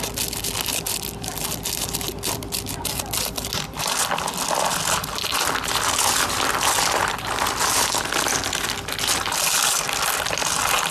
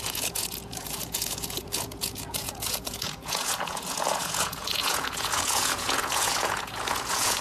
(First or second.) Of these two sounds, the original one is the first